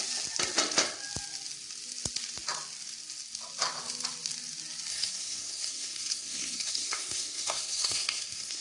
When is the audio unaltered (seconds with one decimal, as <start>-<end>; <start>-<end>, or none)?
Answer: 0.0-4.9